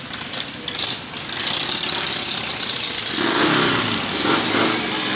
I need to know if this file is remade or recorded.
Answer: recorded